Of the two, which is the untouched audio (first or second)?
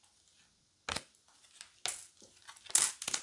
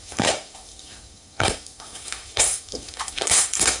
first